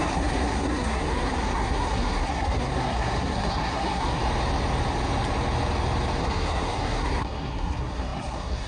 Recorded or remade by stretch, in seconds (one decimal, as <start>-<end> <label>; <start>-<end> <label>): 0.0-4.2 remade; 4.2-6.2 recorded; 6.2-8.7 remade